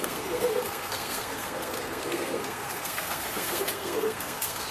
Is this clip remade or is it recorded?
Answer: remade